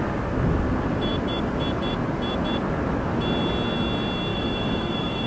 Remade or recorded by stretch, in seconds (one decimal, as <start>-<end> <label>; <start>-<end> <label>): 0.0-4.3 recorded; 4.3-5.3 remade